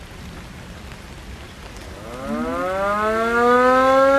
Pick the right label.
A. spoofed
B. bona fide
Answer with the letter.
B